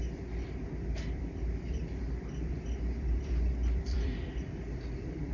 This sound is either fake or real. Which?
fake